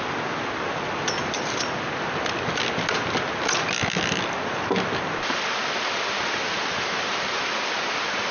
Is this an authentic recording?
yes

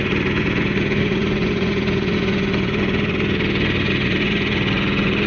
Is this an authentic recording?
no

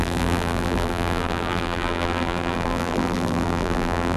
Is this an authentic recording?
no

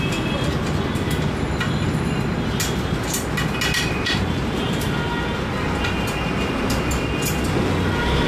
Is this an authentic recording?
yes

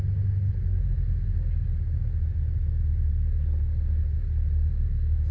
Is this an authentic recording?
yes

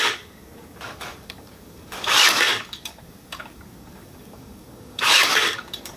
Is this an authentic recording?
no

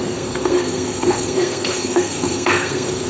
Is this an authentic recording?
no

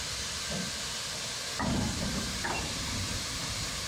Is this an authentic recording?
no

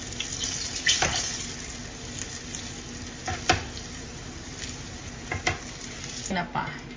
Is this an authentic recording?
yes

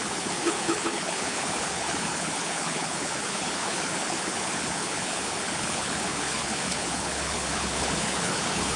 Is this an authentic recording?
no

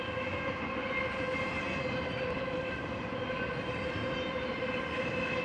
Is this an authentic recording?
yes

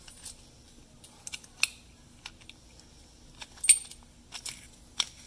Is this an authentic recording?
yes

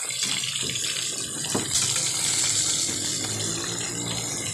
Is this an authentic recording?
yes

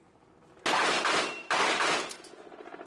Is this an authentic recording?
yes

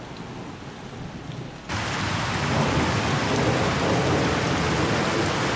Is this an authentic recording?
yes